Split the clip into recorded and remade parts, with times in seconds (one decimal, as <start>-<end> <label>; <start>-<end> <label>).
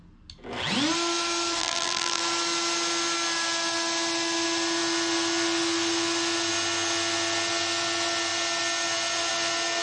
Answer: 0.0-1.6 recorded; 1.6-2.2 remade; 2.2-9.8 recorded